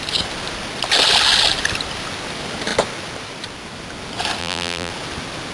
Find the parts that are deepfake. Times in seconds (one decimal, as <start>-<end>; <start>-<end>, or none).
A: 4.4-4.9